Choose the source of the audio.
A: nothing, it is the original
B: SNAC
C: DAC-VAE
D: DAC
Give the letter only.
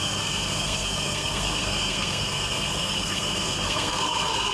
B